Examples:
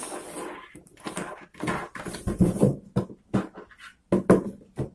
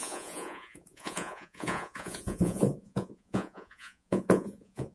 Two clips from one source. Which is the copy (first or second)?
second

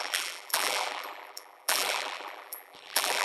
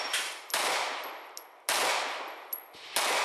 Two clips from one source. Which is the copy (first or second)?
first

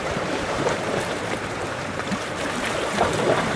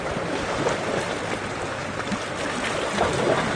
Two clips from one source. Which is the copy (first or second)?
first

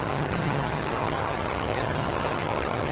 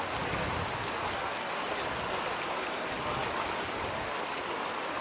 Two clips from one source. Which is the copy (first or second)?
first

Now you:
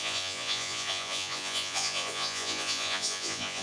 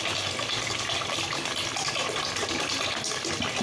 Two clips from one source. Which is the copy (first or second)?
first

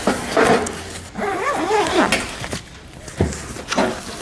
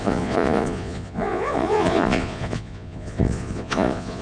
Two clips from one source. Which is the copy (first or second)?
second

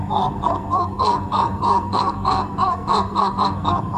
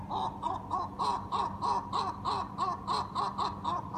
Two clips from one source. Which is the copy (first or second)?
first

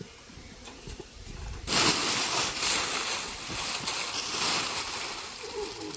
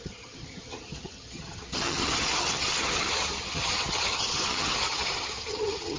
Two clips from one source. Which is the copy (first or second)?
second